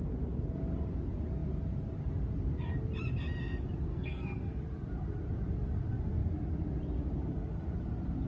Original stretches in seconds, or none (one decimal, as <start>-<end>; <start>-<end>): 0.0-3.9; 4.6-8.3